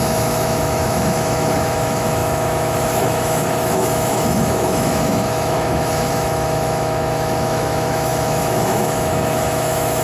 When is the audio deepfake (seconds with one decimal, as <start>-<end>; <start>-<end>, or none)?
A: 0.0-10.0